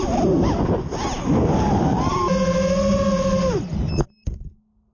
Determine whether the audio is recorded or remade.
recorded